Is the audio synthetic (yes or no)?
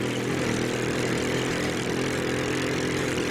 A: yes